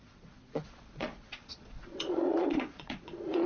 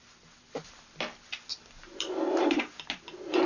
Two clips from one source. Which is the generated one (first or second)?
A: first